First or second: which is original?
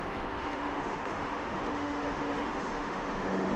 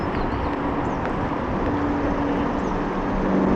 second